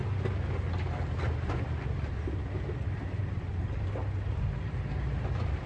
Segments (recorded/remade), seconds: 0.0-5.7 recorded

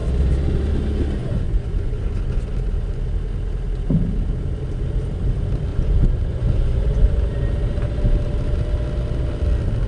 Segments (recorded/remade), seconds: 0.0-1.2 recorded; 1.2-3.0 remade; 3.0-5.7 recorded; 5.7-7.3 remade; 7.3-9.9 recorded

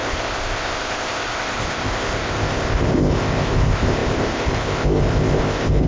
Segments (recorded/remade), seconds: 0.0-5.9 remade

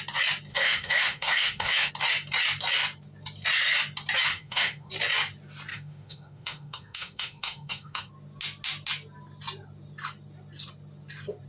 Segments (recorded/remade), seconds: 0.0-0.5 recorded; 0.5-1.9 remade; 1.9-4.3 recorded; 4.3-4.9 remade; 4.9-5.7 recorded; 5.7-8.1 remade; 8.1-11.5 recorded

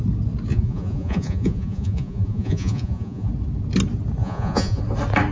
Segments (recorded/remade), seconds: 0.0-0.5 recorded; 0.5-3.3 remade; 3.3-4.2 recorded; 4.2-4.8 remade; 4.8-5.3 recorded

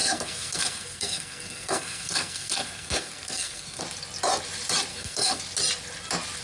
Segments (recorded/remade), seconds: 0.0-3.8 remade; 3.8-4.9 recorded; 4.9-5.4 remade; 5.4-6.4 recorded

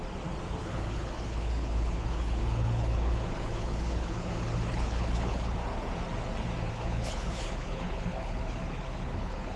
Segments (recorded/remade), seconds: 0.0-0.6 recorded; 0.6-5.6 remade; 5.6-6.7 recorded; 6.7-9.6 remade